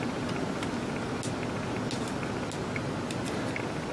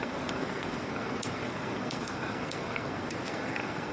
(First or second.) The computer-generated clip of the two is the second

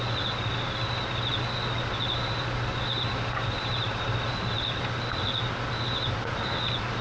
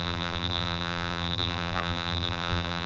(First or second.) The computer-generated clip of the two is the second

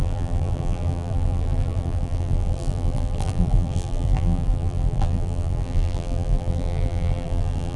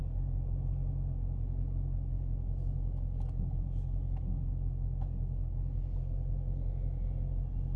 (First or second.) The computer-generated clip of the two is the first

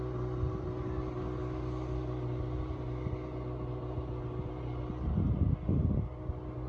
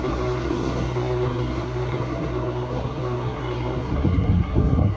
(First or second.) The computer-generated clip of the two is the second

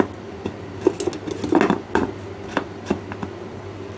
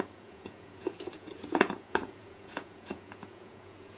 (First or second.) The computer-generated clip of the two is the second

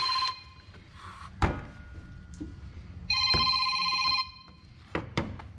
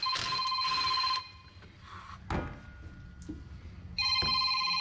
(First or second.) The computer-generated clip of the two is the first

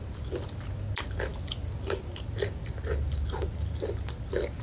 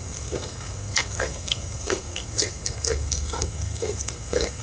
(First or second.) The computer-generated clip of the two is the second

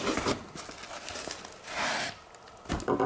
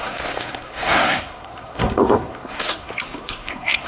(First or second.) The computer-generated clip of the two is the second